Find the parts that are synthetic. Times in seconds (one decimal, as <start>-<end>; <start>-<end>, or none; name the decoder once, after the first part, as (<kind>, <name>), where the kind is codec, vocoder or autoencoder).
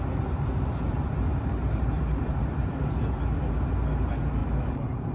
0.9-3.4 (vocoder, BigVGAN v2); 4.4-5.1